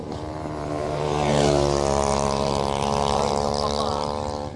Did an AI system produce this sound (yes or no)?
yes